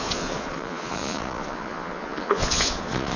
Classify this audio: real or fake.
fake